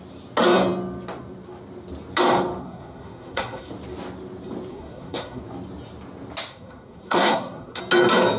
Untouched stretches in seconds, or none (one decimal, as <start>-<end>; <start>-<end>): 0.0-2.6; 3.7-4.7; 5.4-6.5; 7.8-8.4